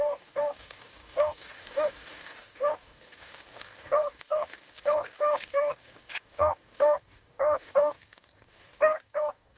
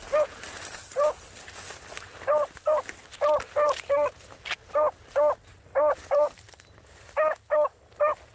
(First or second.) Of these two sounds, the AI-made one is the first